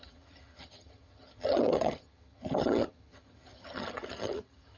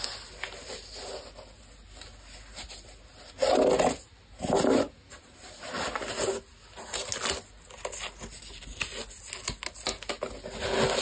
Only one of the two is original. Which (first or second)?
second